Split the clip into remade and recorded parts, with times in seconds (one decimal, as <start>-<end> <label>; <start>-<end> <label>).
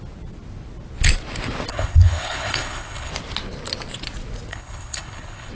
0.0-1.7 recorded; 1.7-3.1 remade; 3.1-4.5 recorded; 4.5-5.5 remade